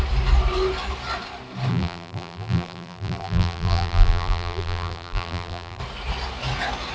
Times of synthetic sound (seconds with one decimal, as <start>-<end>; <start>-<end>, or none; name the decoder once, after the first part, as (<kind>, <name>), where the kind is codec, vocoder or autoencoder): 1.7-5.8 (vocoder, BigVGAN v2)